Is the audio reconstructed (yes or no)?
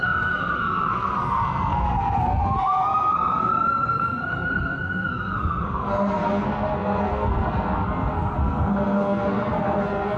yes